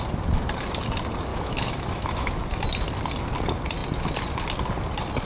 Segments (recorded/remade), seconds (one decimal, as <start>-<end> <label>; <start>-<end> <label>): 0.0-1.3 recorded; 1.3-2.3 remade; 2.3-5.2 recorded